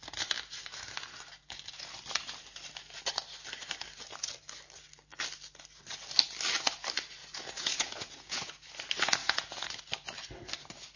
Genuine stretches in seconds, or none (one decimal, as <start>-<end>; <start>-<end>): 0.0-7.2; 8.7-9.2; 9.7-11.0